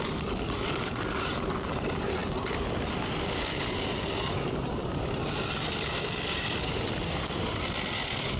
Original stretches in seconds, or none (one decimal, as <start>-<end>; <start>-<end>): 2.2-3.1